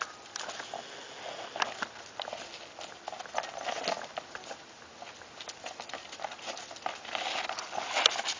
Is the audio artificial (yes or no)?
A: no